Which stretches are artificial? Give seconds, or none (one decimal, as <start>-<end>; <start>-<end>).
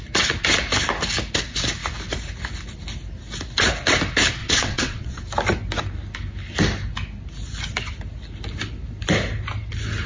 4.4-5.2